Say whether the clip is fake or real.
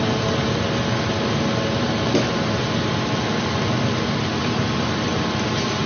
real